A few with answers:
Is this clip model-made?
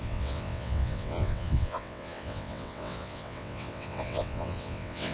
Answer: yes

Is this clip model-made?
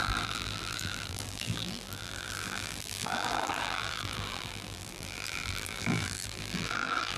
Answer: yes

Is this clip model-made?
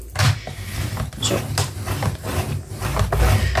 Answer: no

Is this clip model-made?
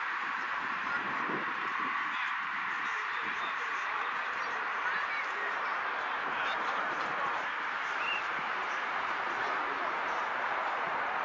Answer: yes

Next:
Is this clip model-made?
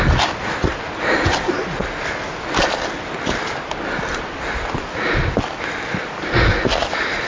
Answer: no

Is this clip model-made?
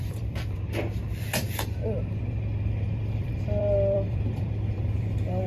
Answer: yes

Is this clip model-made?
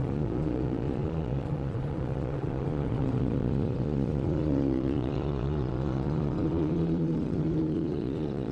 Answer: yes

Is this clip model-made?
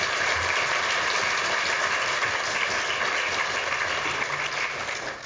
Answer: no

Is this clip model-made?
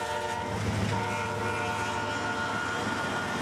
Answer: no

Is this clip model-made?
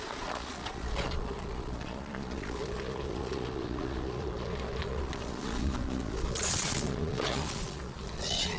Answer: yes